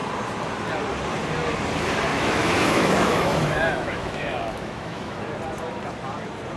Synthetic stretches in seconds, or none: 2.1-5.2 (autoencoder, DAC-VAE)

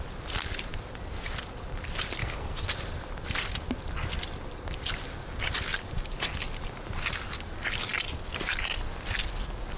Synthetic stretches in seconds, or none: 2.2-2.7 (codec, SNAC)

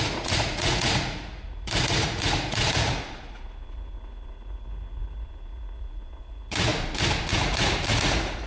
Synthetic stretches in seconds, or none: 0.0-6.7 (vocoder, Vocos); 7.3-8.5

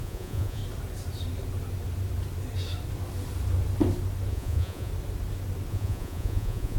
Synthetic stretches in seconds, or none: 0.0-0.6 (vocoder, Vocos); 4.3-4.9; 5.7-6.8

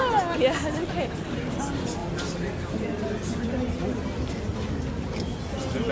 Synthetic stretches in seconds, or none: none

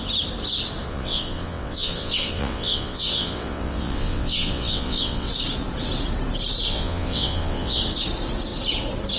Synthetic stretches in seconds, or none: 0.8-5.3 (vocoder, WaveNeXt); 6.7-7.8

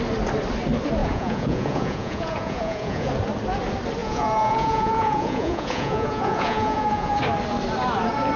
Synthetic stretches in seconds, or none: 1.0-3.1 (vocoder, Vocos); 4.0-7.2

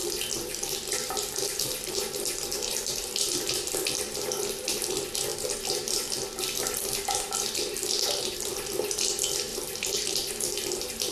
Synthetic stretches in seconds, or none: 0.0-4.7 (vocoder, BigVGAN v2); 9.5-10.1